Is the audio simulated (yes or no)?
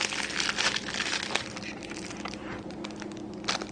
no